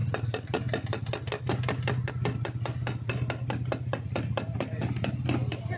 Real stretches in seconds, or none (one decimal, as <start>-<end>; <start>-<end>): 0.0-5.8

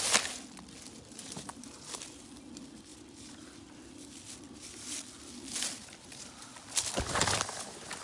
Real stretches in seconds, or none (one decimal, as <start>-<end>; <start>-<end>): 0.0-8.0